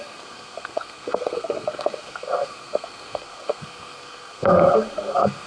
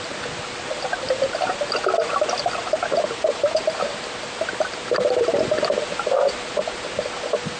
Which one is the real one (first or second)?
second